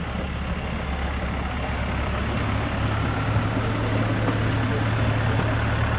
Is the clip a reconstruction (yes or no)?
no